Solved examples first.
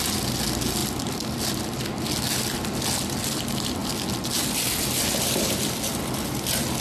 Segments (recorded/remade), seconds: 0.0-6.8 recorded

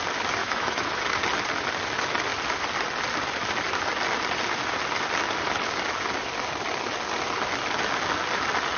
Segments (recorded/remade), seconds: 0.0-0.4 recorded; 0.4-1.0 remade; 1.0-8.8 recorded

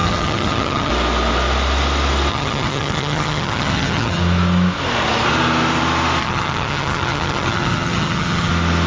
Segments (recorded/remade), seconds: 0.0-0.9 remade; 0.9-2.3 recorded; 2.3-4.2 remade; 4.2-6.2 recorded; 6.2-8.5 remade; 8.5-8.9 recorded

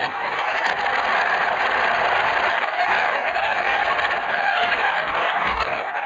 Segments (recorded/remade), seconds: 0.0-0.7 remade; 0.7-2.5 recorded; 2.5-3.8 remade; 3.8-4.3 recorded; 4.3-6.1 remade

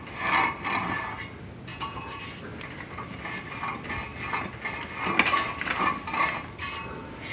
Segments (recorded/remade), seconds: 0.0-1.7 recorded; 1.7-2.2 remade; 2.2-7.3 recorded

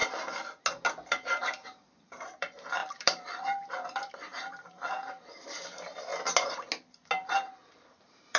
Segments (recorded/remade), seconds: 0.0-1.1 recorded; 1.1-6.1 remade; 6.1-7.3 recorded; 7.3-8.4 remade

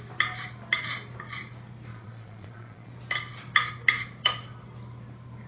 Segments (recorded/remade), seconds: 0.0-1.9 recorded; 1.9-2.9 remade; 2.9-5.5 recorded